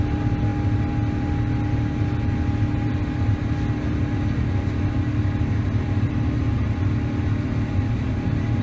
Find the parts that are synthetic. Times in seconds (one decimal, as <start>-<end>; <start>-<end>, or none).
none